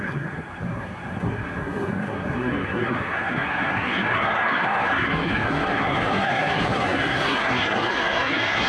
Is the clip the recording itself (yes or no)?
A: no